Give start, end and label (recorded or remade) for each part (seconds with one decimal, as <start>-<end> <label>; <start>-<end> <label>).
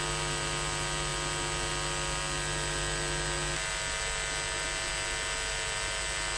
0.0-6.4 recorded